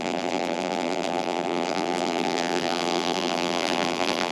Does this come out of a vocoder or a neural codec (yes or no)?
yes